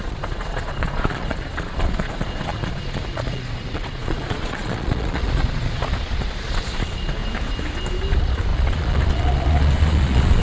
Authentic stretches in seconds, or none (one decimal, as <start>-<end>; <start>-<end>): 7.2-8.1